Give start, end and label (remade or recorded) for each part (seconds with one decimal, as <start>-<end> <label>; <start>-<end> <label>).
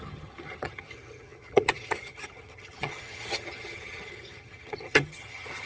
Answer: 0.0-5.7 remade